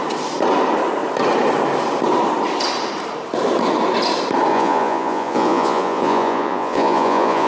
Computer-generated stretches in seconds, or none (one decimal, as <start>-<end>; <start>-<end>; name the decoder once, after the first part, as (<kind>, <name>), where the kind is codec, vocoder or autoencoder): 4.5-7.5 (vocoder, Vocos)